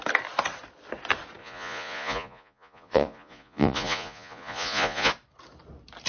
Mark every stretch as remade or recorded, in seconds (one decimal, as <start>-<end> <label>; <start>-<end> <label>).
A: 0.0-1.4 recorded; 1.4-5.1 remade; 5.1-6.1 recorded